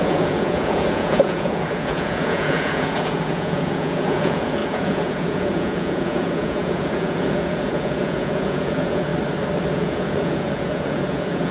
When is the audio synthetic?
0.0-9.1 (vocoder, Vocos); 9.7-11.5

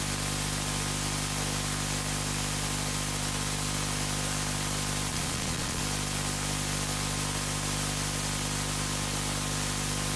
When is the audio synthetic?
5.1-5.8 (vocoder, Vocos)